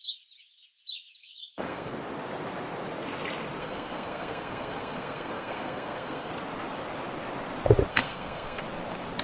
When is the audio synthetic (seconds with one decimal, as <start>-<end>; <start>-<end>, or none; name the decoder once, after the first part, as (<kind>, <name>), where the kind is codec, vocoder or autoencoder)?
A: 1.2-1.9 (codec, SNAC); 3.6-6.3; 7.9-8.6

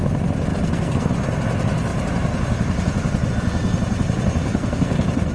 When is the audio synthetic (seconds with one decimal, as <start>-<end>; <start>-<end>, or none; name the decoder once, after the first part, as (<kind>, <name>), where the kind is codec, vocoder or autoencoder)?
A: 0.5-1.1 (codec, SNAC); 4.4-5.3

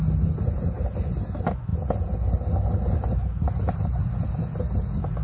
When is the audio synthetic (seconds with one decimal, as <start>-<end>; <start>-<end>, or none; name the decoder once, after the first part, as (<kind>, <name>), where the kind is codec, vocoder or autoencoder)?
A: none

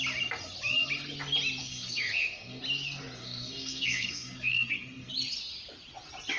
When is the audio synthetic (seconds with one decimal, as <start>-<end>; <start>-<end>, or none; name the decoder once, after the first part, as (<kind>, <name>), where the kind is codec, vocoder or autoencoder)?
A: 1.6-2.6 (codec, SNAC); 3.2-5.1

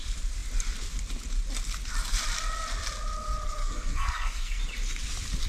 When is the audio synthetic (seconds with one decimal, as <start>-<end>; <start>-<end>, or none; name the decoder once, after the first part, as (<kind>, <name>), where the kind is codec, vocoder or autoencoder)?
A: 3.6-4.6 (codec, SNAC)

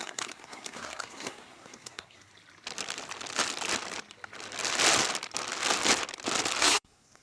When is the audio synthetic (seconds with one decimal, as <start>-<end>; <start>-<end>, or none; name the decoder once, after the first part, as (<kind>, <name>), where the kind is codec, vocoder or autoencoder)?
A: 0.0-2.3 (codec, SNAC); 6.6-7.2